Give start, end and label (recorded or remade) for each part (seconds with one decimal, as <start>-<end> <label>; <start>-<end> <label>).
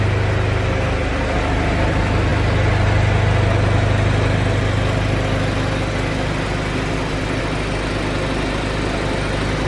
0.0-9.7 recorded